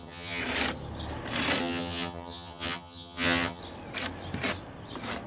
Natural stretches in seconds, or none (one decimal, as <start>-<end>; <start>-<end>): 0.4-1.6; 3.6-5.3